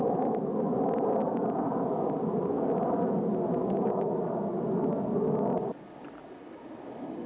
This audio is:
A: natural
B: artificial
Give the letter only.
A